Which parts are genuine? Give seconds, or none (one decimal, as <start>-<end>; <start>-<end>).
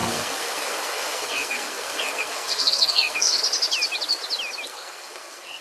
3.4-4.7